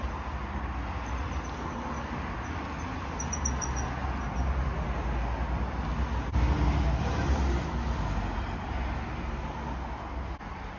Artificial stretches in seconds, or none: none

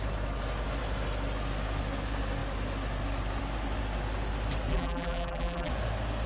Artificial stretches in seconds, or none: 4.7-5.7 (vocoder, BigVGAN v2)

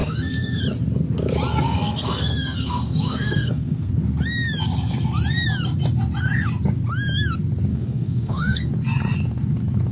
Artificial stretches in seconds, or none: 0.0-0.6 (codec, SNAC); 1.5-3.9; 7.7-8.7

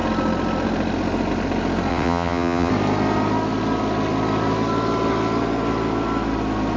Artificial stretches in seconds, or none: 1.9-2.7 (vocoder, WaveNeXt)

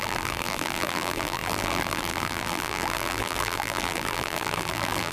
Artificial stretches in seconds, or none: 0.0-5.1 (vocoder, BigVGAN v2)

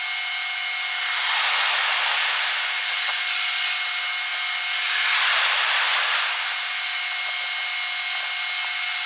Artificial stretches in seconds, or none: none